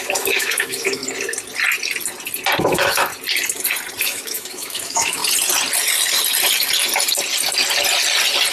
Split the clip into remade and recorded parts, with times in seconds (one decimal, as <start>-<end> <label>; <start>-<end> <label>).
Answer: 0.0-1.0 remade; 1.0-2.6 recorded; 2.6-3.1 remade; 3.1-4.0 recorded; 4.0-5.2 remade; 5.2-8.5 recorded